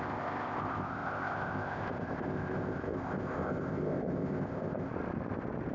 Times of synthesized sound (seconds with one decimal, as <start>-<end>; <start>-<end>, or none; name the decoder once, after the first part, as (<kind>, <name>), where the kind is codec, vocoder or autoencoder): 0.0-4.9 (codec, ZipCodec)